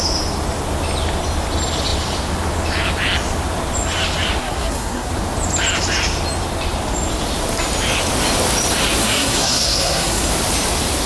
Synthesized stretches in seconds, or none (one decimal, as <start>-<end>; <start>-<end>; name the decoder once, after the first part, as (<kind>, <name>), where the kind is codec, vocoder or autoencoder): 4.4-5.1 (codec, SNAC); 9.0-10.3